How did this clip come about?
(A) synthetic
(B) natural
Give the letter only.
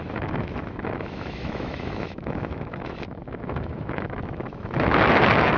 A